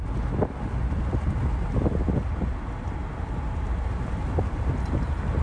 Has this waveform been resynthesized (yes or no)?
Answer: no